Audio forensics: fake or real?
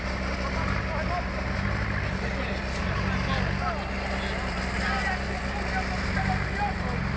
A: real